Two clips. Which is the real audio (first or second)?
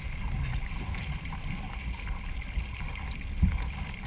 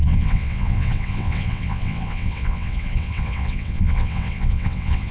first